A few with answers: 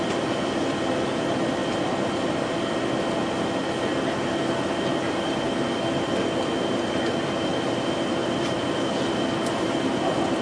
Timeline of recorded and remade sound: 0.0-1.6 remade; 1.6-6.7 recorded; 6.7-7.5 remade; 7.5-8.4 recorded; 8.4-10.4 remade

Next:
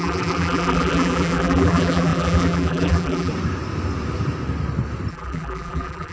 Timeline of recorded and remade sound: 0.0-3.3 remade; 3.3-5.1 recorded; 5.1-6.1 remade

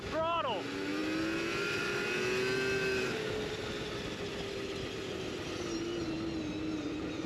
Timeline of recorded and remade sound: 0.0-7.3 recorded

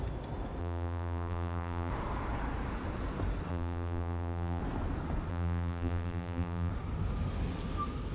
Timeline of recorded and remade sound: 0.0-0.6 recorded; 0.6-1.9 remade; 1.9-3.5 recorded; 3.5-4.6 remade; 4.6-5.3 recorded; 5.3-6.7 remade; 6.7-8.1 recorded

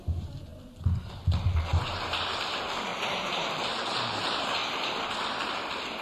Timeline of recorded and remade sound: 0.0-1.7 recorded; 1.7-2.3 remade; 2.3-2.9 recorded; 2.9-4.9 remade; 4.9-6.0 recorded

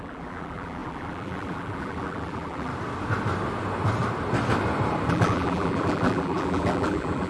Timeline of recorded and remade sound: 0.0-2.7 remade; 2.7-5.1 recorded; 5.1-7.3 remade

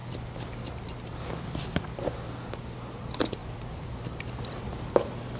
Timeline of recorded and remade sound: 0.0-1.8 remade; 1.8-3.4 recorded; 3.4-3.9 remade; 3.9-5.4 recorded

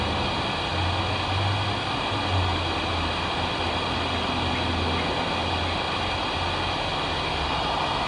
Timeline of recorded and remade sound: 0.0-8.1 recorded